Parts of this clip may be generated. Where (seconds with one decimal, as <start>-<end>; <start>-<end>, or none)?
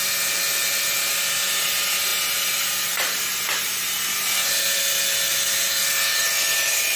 none